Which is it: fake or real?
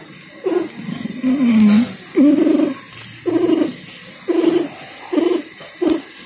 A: real